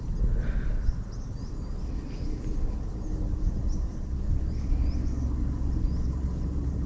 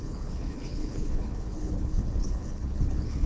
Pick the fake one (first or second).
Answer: second